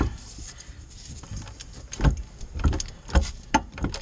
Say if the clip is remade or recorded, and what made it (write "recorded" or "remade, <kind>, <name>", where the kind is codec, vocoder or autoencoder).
remade, vocoder, BigVGAN v2